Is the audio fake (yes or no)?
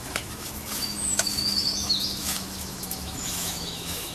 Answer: yes